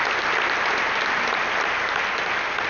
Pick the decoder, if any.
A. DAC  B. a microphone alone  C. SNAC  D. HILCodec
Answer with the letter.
B